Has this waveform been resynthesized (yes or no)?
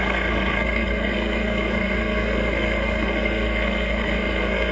yes